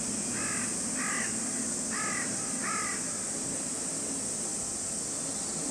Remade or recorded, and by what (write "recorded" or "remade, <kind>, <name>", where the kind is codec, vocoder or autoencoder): recorded